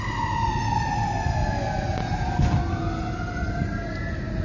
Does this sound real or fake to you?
real